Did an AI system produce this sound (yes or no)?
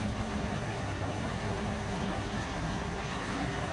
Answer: yes